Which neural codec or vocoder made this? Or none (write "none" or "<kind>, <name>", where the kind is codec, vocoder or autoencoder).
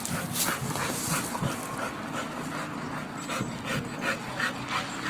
none